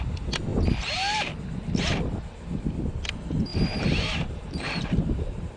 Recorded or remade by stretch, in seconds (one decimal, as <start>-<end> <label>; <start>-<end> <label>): 0.0-3.5 recorded; 3.5-5.6 remade